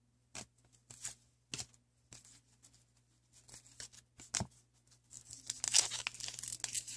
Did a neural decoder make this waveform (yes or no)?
no